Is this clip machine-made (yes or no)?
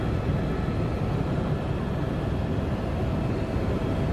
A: no